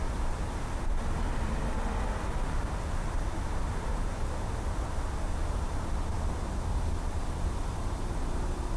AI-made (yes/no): no